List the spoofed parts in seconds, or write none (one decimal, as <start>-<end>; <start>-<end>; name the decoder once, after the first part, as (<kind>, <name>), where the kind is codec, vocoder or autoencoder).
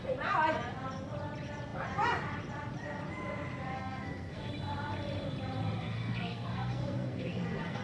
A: 3.7-4.5 (codec, SNAC); 5.8-7.8